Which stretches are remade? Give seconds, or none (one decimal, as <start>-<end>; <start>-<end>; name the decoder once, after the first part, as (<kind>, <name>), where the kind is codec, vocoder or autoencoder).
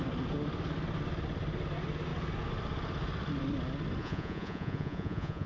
4.0-5.5 (vocoder, Vocos)